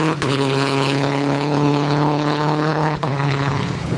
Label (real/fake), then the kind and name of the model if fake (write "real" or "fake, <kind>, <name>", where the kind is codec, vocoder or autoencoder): fake, codec, HILCodec